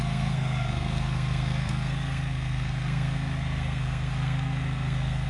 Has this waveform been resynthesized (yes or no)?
yes